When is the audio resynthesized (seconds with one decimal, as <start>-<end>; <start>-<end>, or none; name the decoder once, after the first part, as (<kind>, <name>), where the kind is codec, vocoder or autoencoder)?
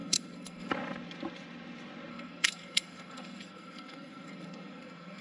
0.0-0.7 (codec, SNAC); 2.1-5.2